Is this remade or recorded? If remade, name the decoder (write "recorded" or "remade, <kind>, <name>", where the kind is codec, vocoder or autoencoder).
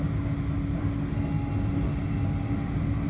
recorded